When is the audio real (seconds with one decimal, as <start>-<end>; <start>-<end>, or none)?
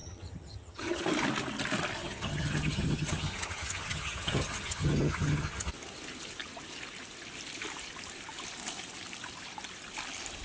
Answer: 1.0-2.0; 5.7-10.4